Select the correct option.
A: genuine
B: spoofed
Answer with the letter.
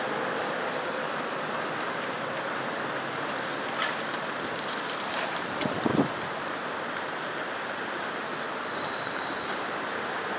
B